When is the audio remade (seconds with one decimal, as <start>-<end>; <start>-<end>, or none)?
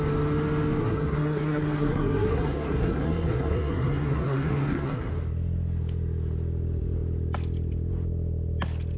0.8-5.1